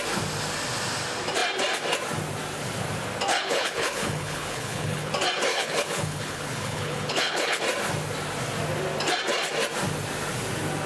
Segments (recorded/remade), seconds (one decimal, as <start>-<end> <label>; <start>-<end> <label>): 0.0-3.3 recorded; 3.3-5.1 remade; 5.1-5.5 recorded; 5.5-7.6 remade; 7.6-10.9 recorded